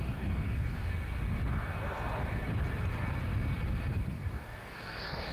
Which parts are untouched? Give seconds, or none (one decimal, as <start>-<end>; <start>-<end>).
0.9-4.1